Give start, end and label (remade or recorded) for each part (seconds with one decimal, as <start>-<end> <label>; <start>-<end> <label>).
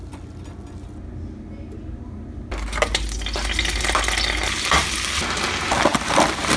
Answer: 0.0-6.6 recorded